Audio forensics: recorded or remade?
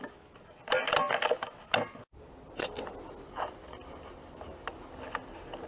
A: recorded